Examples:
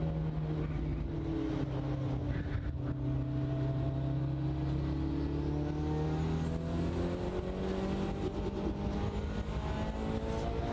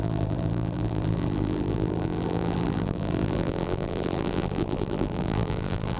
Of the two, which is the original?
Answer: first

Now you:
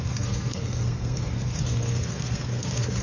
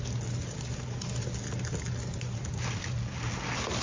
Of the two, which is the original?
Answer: second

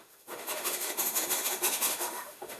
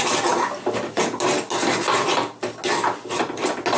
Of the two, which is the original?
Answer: second